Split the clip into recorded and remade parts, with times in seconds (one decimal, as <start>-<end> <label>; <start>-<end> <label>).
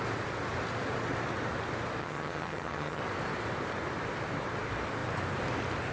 0.0-2.0 recorded; 2.0-3.0 remade; 3.0-5.9 recorded